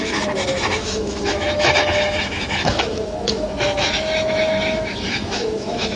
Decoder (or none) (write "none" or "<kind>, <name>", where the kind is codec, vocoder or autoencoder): autoencoder, DAC-VAE